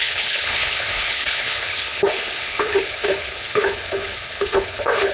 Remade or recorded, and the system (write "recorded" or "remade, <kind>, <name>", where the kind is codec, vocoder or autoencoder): remade, codec, HILCodec